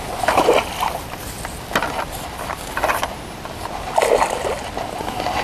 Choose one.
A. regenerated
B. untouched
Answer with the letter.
B